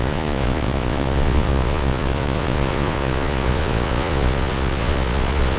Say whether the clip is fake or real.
fake